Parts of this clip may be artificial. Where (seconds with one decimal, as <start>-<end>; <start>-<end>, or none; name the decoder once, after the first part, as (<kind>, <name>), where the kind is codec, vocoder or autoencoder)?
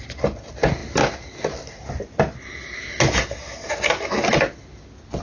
none